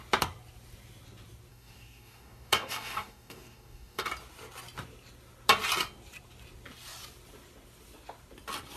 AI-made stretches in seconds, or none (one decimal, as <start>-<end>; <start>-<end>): 1.5-4.1